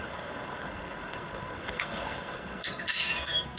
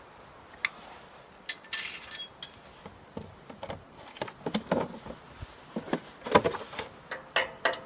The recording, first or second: second